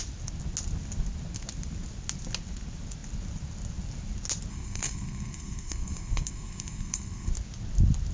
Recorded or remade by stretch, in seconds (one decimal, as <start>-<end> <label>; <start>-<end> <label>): 0.0-4.5 recorded; 4.5-7.3 remade; 7.3-8.1 recorded